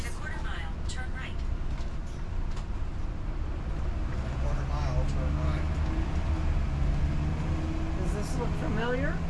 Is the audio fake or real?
real